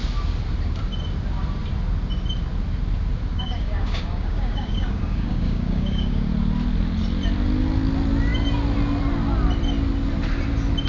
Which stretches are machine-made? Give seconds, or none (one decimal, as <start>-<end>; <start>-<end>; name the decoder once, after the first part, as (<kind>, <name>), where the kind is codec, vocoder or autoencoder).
3.3-6.3 (codec, DAC)